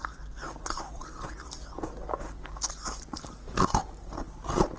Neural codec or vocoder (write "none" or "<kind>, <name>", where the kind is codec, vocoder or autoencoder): none